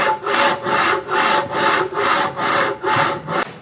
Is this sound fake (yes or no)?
no